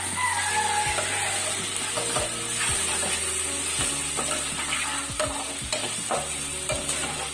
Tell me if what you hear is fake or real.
real